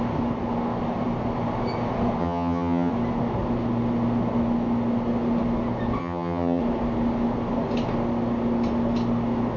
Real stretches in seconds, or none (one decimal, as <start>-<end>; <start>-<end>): 0.0-2.2; 2.9-6.0; 6.6-9.6

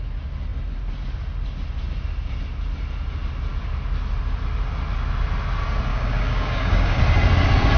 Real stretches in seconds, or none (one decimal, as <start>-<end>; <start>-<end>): 0.0-5.9; 7.0-7.8

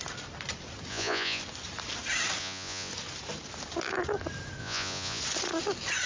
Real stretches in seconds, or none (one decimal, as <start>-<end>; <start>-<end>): 0.0-0.9; 1.4-2.4; 2.9-4.6; 5.2-6.1

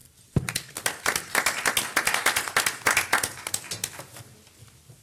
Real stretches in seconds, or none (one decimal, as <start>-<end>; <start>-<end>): 0.0-5.0

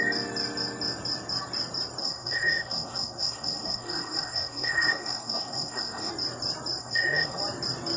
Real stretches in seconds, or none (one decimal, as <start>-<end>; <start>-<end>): 0.0-2.0; 6.1-6.8; 7.4-8.0

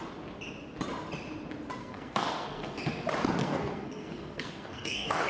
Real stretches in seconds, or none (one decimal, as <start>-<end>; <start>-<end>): 0.0-1.8; 2.8-3.4

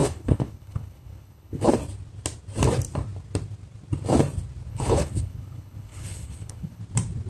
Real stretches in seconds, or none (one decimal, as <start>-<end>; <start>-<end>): 1.7-4.7; 6.8-7.3